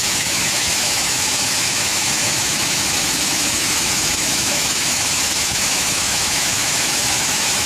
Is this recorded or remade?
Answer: remade